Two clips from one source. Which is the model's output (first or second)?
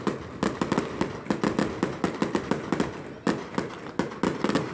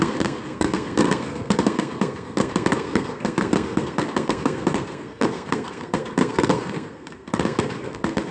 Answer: second